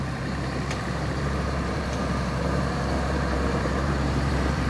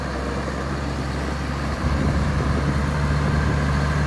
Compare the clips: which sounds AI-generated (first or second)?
first